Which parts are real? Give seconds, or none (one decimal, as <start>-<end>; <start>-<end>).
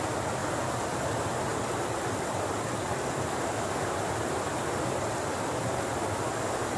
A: 0.0-6.8